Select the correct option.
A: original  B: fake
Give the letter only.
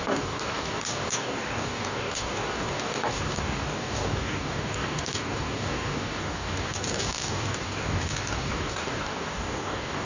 B